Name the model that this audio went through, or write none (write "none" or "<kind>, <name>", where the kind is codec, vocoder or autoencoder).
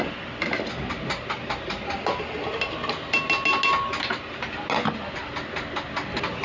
none